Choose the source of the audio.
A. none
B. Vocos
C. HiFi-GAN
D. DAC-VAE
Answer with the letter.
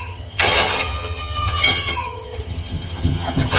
C